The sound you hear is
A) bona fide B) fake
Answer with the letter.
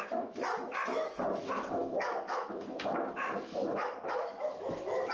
B